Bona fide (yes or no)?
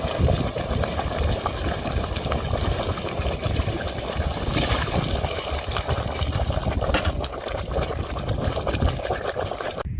yes